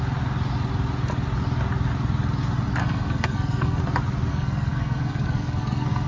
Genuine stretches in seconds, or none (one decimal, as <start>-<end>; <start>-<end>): 0.0-2.8; 3.8-4.3